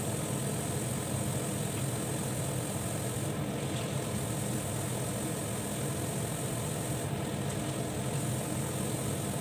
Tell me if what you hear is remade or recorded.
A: recorded